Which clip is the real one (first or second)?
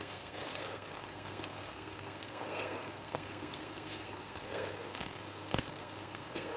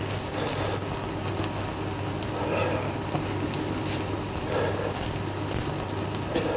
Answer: second